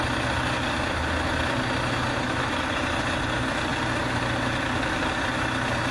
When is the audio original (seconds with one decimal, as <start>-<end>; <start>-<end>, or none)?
0.0-5.9